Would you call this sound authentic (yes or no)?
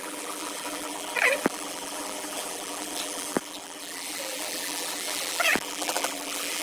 no